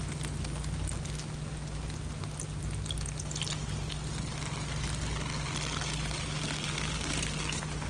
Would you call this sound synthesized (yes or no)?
no